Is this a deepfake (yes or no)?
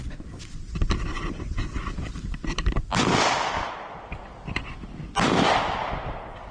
no